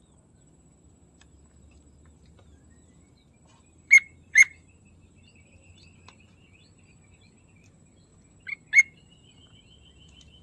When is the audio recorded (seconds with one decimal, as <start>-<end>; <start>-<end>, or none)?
8.1-8.8